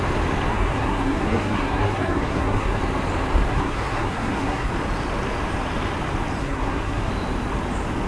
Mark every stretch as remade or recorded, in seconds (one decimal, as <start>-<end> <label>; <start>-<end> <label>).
0.0-0.5 recorded; 0.5-2.8 remade; 2.8-3.5 recorded; 3.5-4.7 remade; 4.7-6.4 recorded; 6.4-7.1 remade; 7.1-8.1 recorded